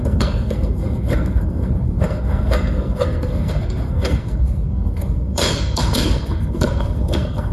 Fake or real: fake